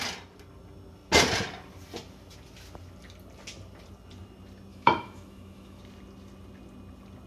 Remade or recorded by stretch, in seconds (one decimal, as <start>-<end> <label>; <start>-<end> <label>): 0.0-4.7 recorded; 4.7-5.8 remade; 5.8-7.3 recorded